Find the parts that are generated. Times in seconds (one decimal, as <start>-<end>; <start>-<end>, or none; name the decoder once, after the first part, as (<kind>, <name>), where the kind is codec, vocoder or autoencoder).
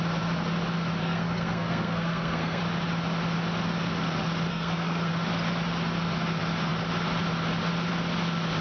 1.0-2.6 (codec, SNAC); 4.5-5.1